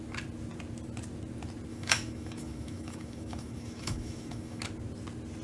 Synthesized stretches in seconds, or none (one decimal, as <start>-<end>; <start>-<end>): 1.7-4.6